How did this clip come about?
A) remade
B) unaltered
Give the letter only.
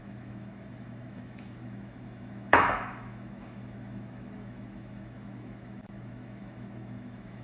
A